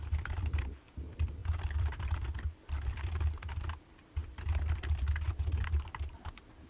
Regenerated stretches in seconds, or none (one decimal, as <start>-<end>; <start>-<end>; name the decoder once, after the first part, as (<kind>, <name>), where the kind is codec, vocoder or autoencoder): 0.0-4.2 (vocoder, BigVGAN v2); 5.6-6.7